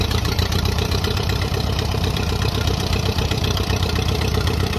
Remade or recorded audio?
remade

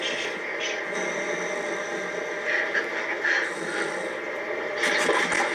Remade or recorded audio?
recorded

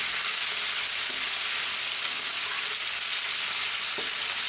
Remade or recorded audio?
recorded